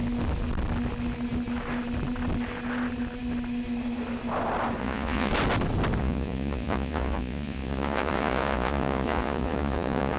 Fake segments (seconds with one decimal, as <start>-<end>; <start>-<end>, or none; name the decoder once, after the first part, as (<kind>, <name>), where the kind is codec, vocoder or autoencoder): 4.8-5.3 (vocoder, Vocos); 6.0-10.2